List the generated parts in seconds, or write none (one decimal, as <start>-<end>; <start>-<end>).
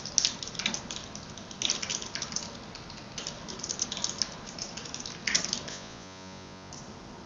5.7-6.7